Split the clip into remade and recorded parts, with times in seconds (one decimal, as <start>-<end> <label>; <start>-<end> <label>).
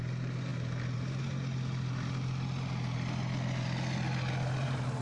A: 0.0-5.0 recorded